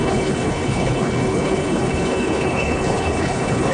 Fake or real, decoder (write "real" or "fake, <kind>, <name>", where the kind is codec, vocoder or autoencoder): fake, codec, HILCodec